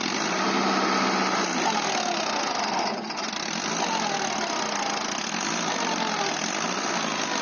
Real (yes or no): yes